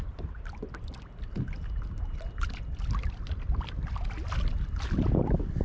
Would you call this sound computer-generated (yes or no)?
no